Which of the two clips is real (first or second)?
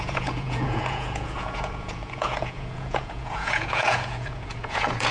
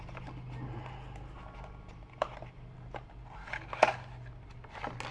second